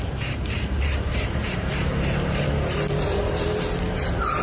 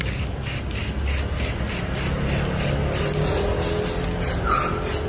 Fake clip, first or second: first